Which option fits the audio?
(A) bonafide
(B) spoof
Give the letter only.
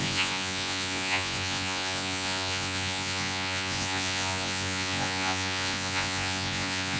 B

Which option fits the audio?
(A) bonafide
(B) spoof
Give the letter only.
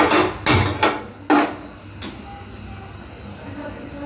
A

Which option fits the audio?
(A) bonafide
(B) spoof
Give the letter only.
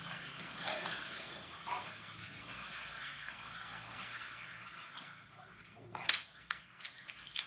B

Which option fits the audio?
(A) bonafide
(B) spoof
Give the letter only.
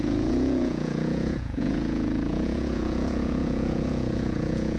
B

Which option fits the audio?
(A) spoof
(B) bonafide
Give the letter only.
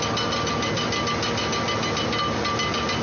B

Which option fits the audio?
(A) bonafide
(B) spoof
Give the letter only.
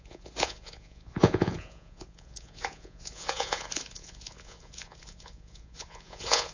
B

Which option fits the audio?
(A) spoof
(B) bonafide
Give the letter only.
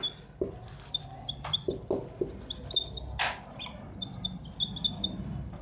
B